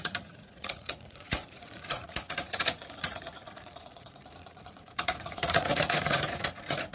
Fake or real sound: fake